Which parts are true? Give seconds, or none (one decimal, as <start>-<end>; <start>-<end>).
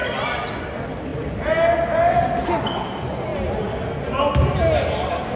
0.0-5.4